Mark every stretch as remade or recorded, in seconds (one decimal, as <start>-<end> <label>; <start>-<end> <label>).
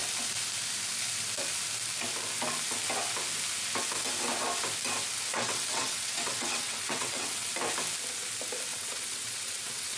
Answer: 0.0-5.3 recorded; 5.3-7.5 remade; 7.5-8.7 recorded; 8.7-10.0 remade